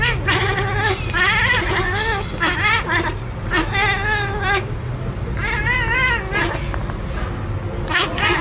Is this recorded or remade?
recorded